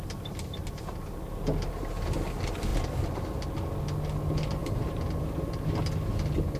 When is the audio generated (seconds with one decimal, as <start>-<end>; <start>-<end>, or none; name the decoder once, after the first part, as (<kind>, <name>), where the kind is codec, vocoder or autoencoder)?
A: 2.7-3.3 (vocoder, BigVGAN v2); 4.6-5.2